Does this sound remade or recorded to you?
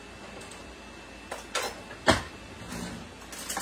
recorded